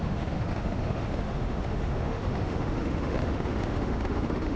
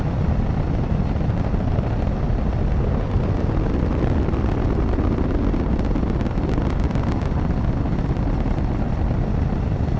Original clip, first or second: second